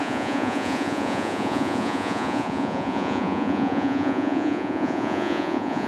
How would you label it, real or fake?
fake